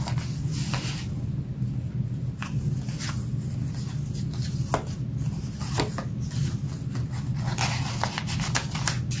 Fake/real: real